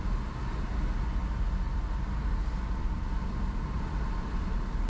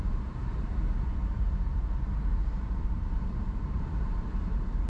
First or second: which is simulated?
second